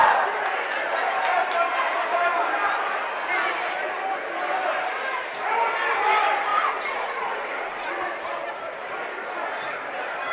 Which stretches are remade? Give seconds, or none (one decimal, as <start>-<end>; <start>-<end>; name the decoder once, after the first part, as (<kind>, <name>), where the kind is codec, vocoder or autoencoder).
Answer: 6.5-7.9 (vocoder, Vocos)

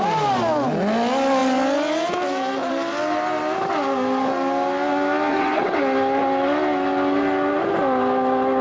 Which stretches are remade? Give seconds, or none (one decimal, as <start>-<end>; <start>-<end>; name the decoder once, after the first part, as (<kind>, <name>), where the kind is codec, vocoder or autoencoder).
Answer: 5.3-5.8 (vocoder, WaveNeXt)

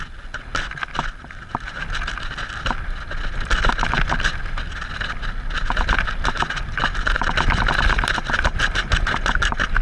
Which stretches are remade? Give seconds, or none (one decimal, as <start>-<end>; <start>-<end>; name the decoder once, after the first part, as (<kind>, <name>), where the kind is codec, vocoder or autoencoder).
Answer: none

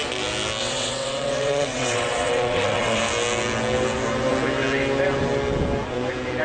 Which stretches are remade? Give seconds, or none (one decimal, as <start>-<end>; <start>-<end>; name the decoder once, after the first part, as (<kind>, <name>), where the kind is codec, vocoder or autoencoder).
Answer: 0.6-3.0 (vocoder, WaveNeXt)